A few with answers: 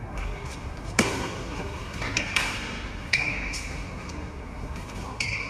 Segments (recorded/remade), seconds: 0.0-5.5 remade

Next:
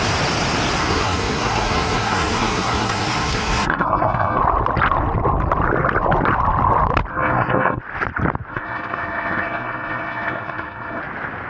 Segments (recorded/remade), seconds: 0.0-0.8 recorded; 0.8-4.4 remade; 4.4-7.1 recorded; 7.1-7.8 remade; 7.8-8.5 recorded; 8.5-11.0 remade; 11.0-11.5 recorded